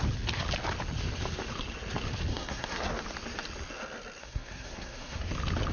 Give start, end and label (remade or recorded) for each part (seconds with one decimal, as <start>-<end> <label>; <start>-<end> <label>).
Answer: 0.0-2.3 recorded; 2.3-2.9 remade; 2.9-4.2 recorded; 4.2-5.3 remade; 5.3-5.7 recorded